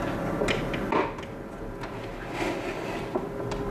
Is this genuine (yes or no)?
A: yes